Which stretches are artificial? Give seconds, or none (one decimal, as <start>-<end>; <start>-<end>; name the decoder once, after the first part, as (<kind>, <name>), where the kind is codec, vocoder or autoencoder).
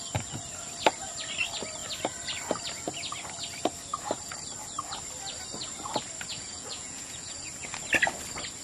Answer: 6.3-7.5 (vocoder, Vocos)